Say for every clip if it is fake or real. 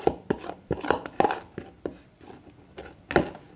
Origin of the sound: real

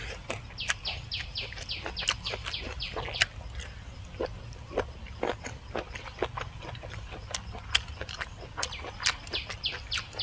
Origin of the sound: real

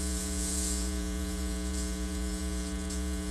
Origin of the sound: fake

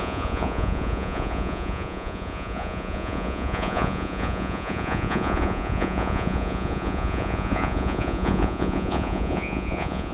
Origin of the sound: fake